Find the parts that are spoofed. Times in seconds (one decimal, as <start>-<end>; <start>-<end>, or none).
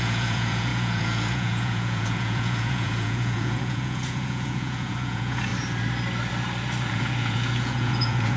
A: 0.0-5.5; 6.9-8.4